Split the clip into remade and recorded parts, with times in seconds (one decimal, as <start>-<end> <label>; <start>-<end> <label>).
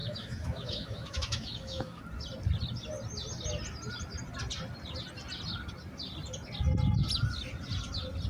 0.0-2.0 remade; 2.0-8.3 recorded